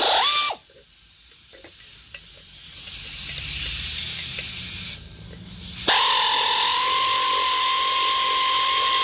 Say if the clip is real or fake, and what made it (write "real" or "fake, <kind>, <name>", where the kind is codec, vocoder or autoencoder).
real